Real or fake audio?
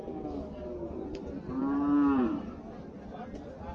real